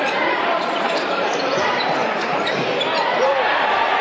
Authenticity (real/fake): fake